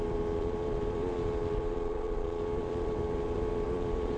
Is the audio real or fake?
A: fake